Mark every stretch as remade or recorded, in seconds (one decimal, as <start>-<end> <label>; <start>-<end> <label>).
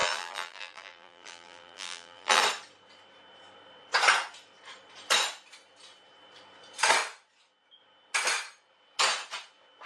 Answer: 0.0-2.4 remade; 2.4-9.9 recorded